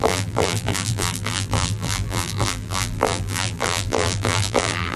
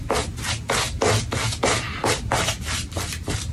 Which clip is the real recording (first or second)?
second